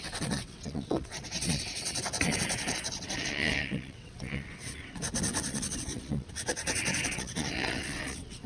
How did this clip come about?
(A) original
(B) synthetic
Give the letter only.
B